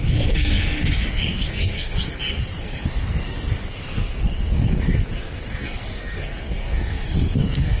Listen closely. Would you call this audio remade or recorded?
remade